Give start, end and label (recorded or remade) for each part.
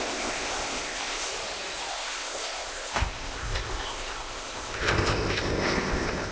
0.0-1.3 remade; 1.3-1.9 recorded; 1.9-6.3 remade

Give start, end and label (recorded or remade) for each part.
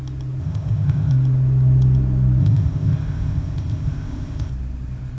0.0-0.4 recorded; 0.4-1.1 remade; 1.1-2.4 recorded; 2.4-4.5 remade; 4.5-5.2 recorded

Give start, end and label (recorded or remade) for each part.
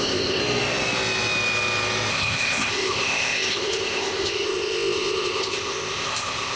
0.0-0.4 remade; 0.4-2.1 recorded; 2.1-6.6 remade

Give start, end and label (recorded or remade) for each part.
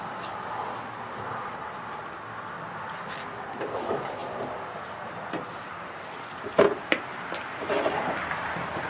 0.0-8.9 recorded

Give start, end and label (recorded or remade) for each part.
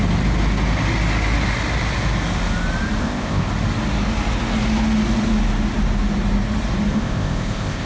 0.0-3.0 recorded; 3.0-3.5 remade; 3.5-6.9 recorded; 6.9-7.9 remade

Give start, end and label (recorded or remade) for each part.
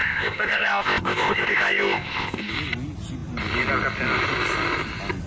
0.0-2.5 remade; 2.5-5.3 recorded